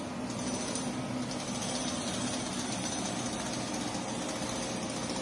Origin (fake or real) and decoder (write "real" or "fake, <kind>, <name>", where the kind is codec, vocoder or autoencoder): real